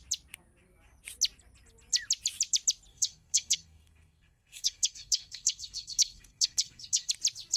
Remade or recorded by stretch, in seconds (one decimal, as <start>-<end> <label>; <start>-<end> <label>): 0.0-2.9 recorded; 2.9-7.1 remade; 7.1-7.6 recorded